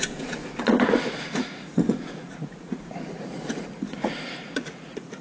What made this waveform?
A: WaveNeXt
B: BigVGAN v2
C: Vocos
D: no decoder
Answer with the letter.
C